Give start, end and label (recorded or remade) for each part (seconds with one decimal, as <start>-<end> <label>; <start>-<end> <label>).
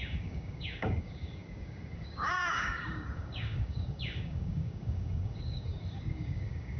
0.0-6.8 remade